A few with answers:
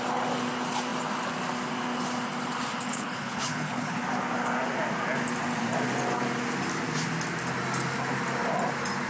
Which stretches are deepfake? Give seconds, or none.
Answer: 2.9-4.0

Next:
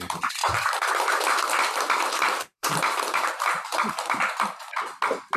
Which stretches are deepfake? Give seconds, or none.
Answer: 0.4-1.1; 2.5-4.2

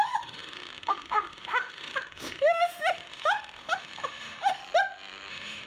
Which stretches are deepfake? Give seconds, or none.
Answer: 0.0-4.6; 5.3-5.7

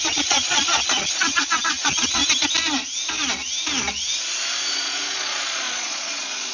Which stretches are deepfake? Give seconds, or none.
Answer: 0.0-2.2; 4.7-6.5

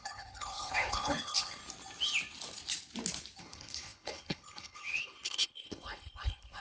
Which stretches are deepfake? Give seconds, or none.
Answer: 0.0-1.6; 3.4-6.6